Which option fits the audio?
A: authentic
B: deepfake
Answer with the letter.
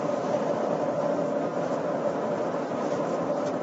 A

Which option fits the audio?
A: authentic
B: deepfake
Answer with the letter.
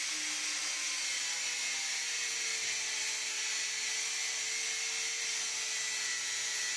A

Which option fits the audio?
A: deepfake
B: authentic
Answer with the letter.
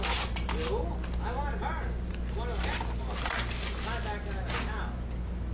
B